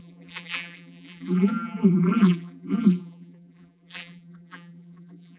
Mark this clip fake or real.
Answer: fake